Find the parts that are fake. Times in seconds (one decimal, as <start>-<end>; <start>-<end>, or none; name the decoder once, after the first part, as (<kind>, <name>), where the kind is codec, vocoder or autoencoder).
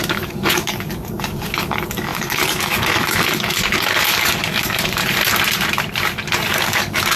0.0-5.0 (codec, DAC); 6.5-7.2